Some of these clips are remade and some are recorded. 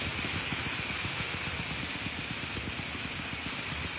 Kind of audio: recorded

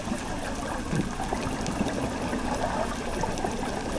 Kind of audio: recorded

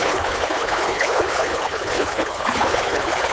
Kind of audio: remade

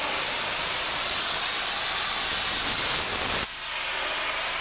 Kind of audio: recorded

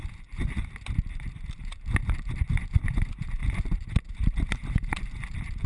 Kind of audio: remade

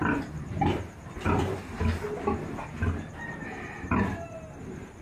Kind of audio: remade